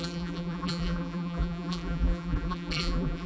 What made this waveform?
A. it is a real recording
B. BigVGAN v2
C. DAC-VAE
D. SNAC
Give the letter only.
B